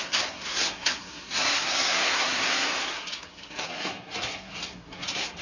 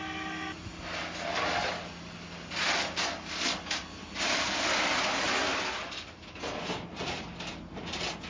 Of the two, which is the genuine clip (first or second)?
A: second